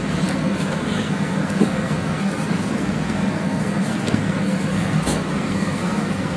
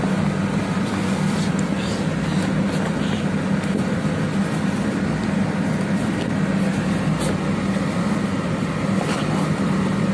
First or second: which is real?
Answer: second